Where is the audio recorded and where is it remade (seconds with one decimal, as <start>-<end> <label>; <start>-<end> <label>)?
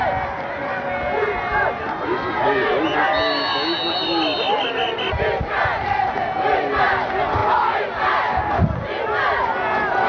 0.0-10.1 recorded